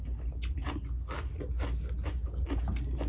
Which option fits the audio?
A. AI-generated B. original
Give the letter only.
B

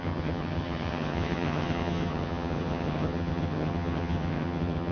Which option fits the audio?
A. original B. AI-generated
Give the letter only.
B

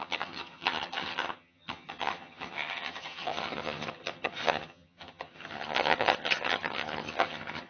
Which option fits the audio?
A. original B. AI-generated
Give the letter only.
B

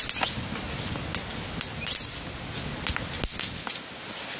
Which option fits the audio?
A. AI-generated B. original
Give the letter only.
B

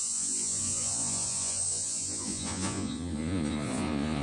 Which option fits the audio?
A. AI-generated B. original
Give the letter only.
A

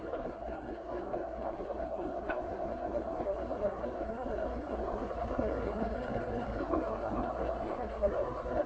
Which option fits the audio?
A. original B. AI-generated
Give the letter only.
B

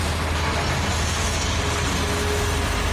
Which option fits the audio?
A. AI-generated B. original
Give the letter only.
B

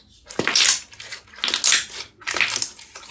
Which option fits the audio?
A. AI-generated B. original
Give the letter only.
B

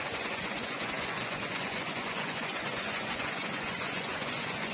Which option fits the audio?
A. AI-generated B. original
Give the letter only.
A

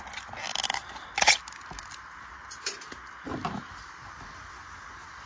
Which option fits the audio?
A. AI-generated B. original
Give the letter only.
B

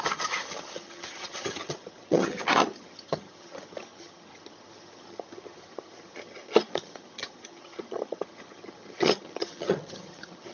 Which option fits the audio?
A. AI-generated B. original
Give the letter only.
A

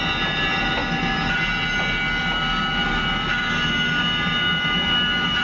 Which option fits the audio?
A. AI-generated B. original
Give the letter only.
B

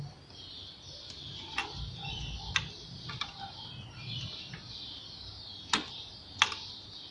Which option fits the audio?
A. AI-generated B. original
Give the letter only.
B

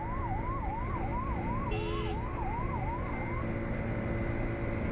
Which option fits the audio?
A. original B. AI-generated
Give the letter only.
A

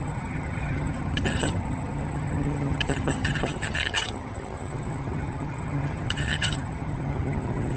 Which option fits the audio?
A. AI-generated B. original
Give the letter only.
A